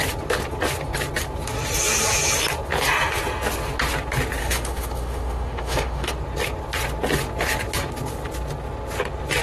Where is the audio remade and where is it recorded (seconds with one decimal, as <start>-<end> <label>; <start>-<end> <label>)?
0.0-4.4 recorded; 4.4-6.1 remade; 6.1-9.4 recorded